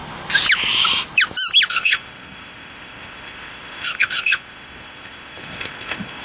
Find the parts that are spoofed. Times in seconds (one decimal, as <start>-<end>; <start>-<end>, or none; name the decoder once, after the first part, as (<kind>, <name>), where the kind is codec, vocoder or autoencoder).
1.7-6.2 (codec, ZipCodec)

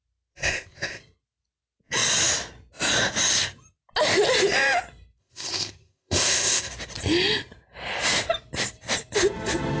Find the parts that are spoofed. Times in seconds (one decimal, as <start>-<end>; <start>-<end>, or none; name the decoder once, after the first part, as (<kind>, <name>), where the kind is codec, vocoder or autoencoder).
0.4-1.0 (codec, ZipCodec); 5.2-6.7